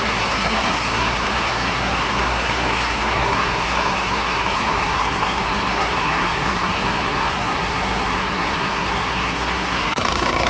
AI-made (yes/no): yes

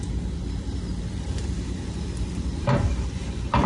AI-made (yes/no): yes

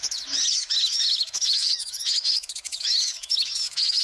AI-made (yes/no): yes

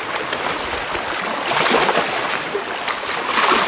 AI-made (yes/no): no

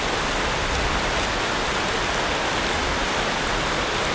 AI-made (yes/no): no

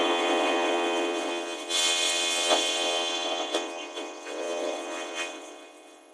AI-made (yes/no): yes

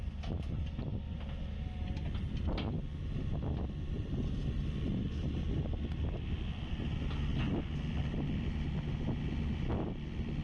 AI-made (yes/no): no